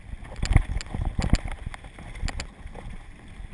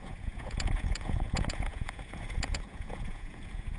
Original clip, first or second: first